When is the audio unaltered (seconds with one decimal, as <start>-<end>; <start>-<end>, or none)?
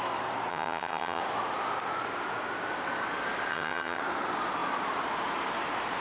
0.0-0.5; 1.2-3.5; 4.0-6.0